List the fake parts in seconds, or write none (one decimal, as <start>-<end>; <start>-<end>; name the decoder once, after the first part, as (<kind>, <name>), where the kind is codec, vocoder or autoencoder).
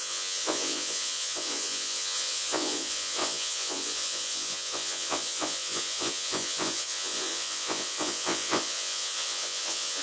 0.0-10.0 (vocoder, Vocos)